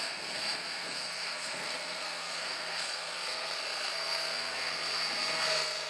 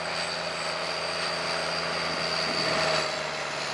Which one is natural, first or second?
second